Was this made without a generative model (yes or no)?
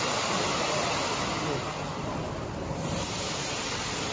no